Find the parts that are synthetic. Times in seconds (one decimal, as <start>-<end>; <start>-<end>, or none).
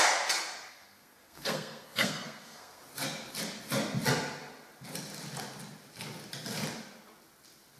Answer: 0.7-2.8